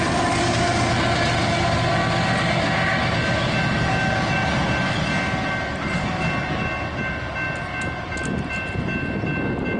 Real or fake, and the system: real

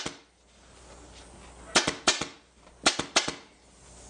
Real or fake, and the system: real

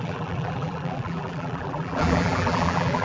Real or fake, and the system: fake, vocoder, BigVGAN v2